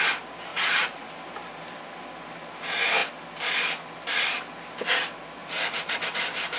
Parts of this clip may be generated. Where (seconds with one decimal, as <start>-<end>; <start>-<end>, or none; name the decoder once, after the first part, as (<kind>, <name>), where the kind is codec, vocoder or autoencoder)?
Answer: 0.5-1.1 (vocoder, Vocos); 5.4-6.0

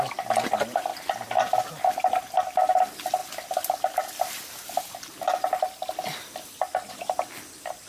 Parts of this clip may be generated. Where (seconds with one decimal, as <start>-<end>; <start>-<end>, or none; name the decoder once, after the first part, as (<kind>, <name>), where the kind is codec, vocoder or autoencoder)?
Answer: none